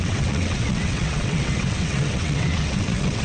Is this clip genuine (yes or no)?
no